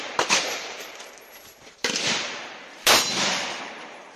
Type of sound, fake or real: fake